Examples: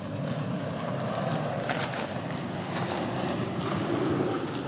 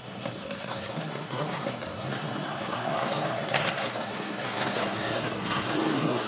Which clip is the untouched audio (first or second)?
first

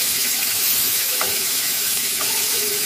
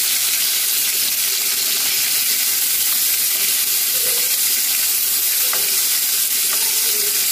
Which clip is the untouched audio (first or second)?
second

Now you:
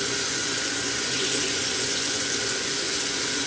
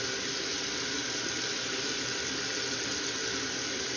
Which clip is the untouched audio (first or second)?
second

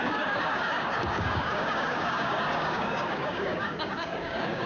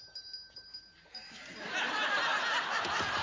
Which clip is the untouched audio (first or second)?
second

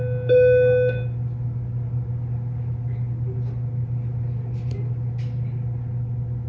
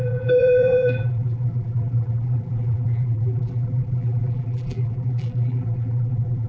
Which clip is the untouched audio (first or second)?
first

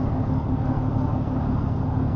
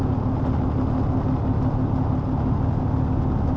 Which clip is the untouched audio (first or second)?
second